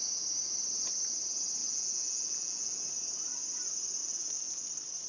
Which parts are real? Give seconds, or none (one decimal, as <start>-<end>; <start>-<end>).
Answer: 0.0-1.6; 2.8-4.0; 4.6-5.1